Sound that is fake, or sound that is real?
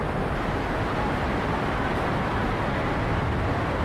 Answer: real